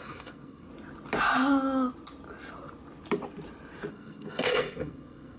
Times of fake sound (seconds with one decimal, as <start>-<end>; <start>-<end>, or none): 0.0-0.7; 3.9-5.4